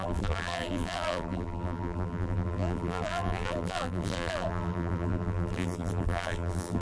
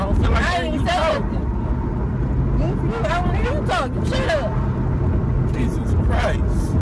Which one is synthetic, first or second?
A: first